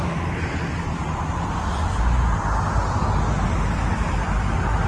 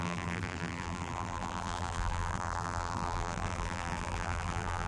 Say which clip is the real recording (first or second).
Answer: first